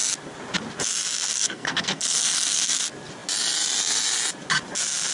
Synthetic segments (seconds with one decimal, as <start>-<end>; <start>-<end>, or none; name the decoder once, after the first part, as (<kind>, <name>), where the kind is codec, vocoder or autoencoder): 1.3-2.8 (codec, SNAC)